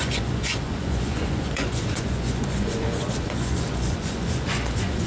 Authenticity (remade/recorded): remade